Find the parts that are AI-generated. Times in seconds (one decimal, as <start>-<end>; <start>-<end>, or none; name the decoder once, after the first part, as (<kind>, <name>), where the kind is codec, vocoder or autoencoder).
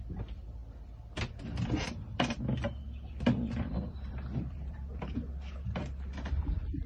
0.0-6.9 (vocoder, BigVGAN v2)